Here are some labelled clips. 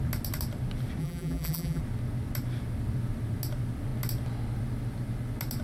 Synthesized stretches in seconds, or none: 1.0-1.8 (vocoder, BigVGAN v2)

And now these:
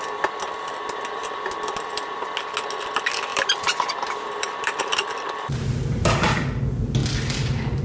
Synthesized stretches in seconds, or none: 3.3-6.1 (vocoder, BigVGAN v2)

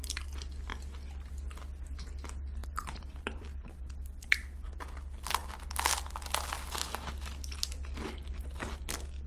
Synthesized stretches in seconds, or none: 2.6-3.9 (vocoder, BigVGAN v2)

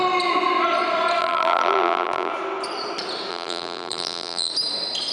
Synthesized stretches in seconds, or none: 1.2-2.3 (vocoder, BigVGAN v2); 3.3-4.5

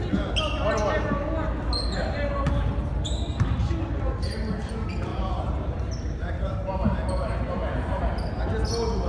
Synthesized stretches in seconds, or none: 5.1-8.0 (vocoder, BigVGAN v2)